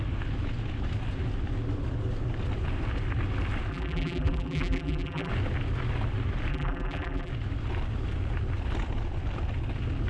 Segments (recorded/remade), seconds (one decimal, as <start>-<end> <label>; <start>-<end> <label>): 0.0-3.7 recorded; 3.7-5.3 remade; 5.3-6.5 recorded; 6.5-7.3 remade; 7.3-10.1 recorded